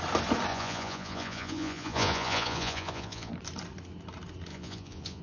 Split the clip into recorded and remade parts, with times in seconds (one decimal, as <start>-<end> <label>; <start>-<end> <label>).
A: 0.0-0.5 recorded; 0.5-3.3 remade; 3.3-4.5 recorded; 4.5-5.2 remade